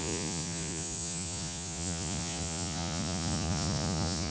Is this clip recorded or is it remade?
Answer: remade